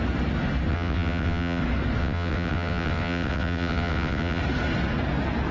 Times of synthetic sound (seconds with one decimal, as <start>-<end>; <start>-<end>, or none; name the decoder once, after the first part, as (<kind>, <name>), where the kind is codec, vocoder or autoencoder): 0.7-1.6 (vocoder, WaveNeXt); 2.0-4.4